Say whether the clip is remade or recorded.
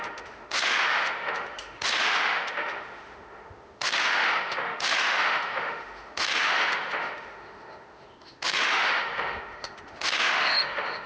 remade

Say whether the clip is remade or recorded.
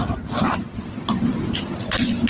recorded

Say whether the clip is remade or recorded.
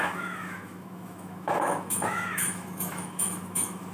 remade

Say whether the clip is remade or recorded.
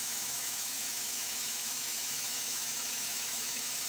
remade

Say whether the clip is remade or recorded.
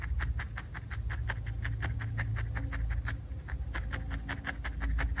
recorded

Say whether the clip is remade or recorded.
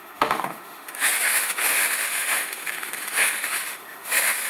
remade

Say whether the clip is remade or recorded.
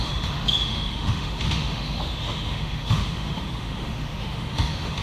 remade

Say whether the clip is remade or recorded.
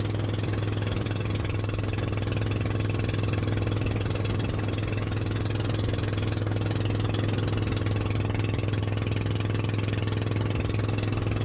recorded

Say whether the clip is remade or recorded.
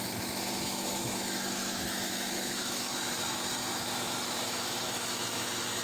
remade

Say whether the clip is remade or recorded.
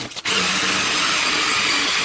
recorded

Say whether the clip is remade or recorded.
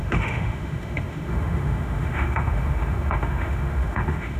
remade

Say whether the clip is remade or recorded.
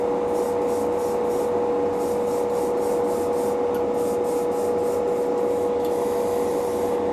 recorded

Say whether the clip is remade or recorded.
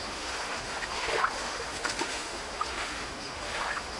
remade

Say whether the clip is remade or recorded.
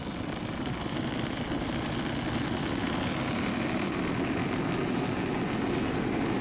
recorded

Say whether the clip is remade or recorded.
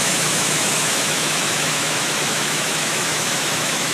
remade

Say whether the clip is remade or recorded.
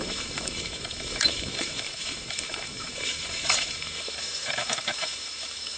remade